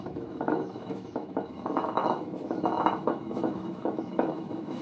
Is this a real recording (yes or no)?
no